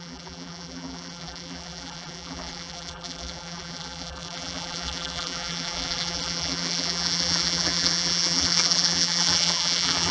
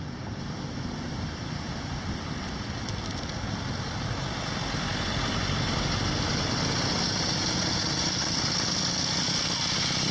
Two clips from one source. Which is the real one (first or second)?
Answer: second